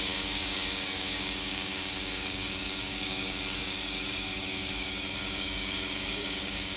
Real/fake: fake